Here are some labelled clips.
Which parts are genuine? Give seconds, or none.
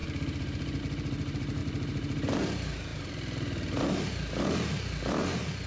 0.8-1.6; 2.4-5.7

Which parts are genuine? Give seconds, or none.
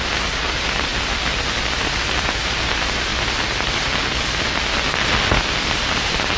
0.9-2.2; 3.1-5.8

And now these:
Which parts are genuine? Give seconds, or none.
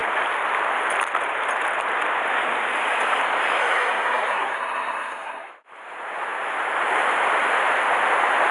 0.0-3.6; 5.5-8.5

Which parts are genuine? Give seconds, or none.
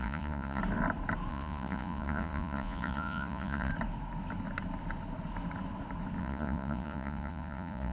0.6-1.3; 3.7-6.2